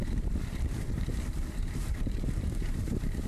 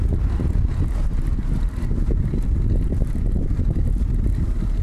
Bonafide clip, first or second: second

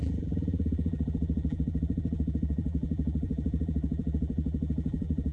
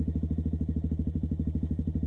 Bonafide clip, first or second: second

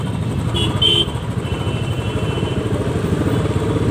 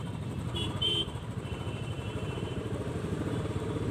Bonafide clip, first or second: first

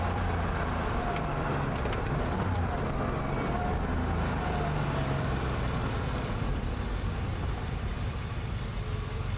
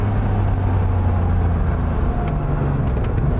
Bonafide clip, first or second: second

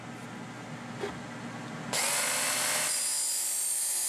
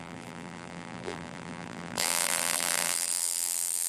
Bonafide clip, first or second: first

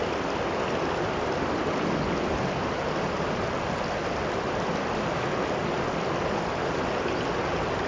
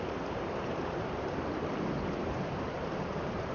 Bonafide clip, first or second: first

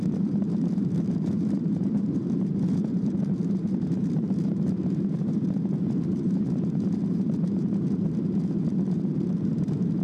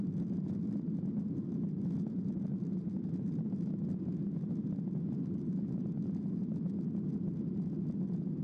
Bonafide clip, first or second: second